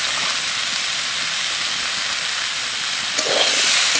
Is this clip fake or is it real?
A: real